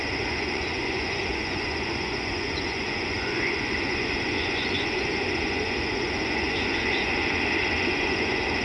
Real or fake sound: fake